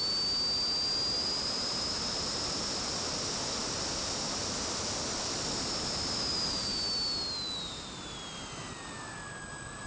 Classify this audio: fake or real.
real